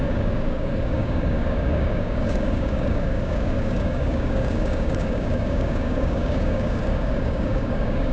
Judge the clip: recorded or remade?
remade